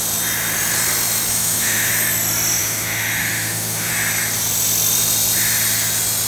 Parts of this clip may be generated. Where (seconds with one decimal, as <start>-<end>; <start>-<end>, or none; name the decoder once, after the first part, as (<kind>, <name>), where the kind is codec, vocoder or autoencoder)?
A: 1.3-1.9 (autoencoder, DAC-VAE); 2.6-3.9